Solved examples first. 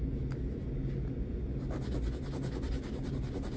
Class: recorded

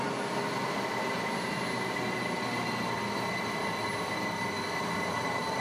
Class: recorded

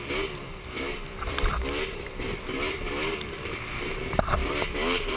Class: remade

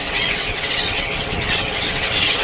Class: remade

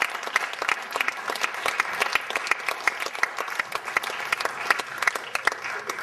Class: recorded